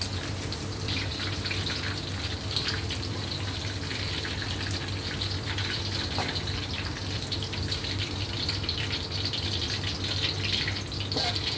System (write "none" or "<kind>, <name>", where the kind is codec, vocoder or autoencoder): none